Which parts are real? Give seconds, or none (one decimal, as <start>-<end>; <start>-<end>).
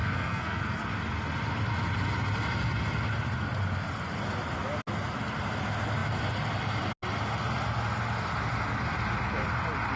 0.6-10.0